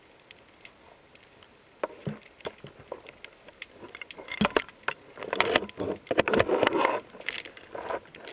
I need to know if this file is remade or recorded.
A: recorded